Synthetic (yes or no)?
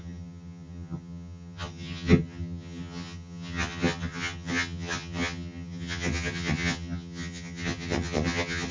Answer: yes